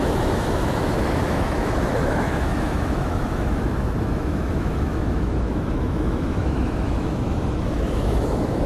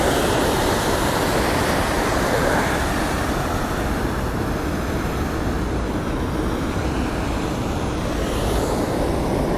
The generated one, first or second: first